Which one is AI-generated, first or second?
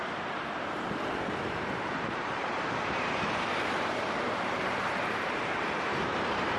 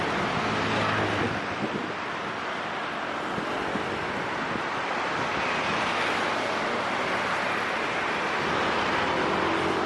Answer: first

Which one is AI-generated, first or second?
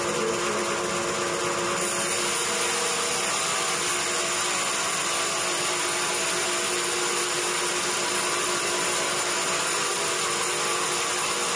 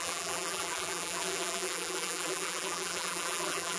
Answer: second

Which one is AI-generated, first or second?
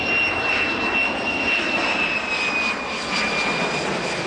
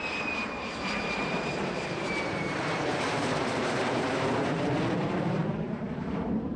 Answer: second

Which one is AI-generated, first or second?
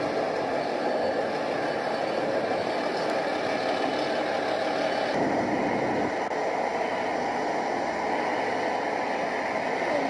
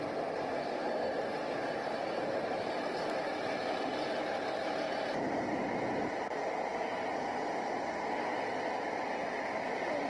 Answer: second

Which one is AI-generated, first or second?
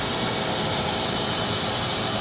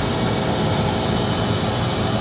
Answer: first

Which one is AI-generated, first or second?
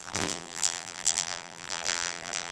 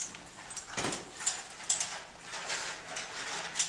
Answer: first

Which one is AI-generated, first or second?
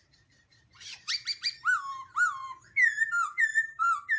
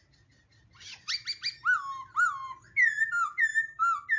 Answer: first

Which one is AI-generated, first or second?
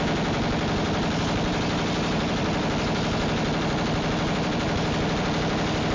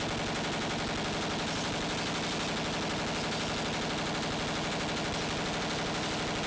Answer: first